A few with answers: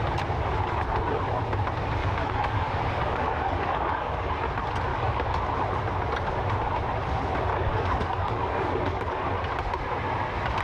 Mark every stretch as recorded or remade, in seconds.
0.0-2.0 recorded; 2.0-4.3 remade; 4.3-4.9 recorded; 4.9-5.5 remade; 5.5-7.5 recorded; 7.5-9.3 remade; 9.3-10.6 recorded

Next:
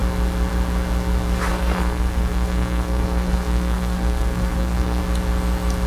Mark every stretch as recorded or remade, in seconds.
0.0-1.5 recorded; 1.5-5.0 remade; 5.0-5.9 recorded

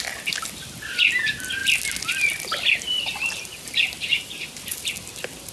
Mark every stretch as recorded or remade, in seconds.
0.0-1.6 recorded; 1.6-4.9 remade; 4.9-5.5 recorded